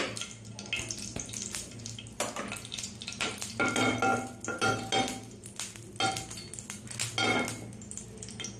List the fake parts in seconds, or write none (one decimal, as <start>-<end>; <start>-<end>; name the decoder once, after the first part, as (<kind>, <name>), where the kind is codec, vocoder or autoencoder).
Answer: none